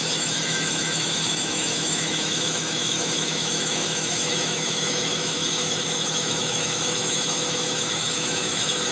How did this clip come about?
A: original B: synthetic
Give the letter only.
B